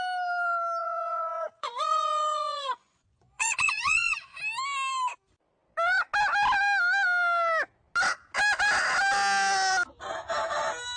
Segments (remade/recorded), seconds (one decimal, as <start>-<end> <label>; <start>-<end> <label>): 0.0-0.8 recorded; 0.8-4.4 remade; 4.4-11.0 recorded